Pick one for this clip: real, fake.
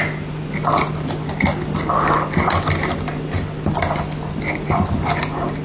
real